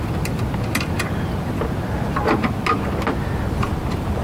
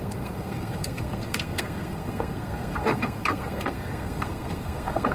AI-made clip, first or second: second